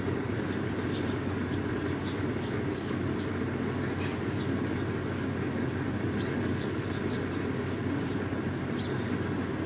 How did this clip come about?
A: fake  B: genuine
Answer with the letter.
B